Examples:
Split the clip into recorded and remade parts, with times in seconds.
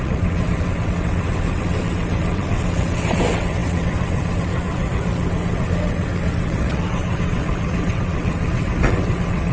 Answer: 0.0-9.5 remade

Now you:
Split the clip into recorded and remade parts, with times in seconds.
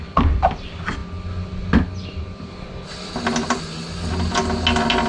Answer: 0.0-5.1 recorded